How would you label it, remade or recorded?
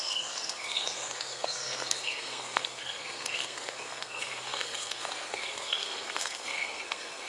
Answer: remade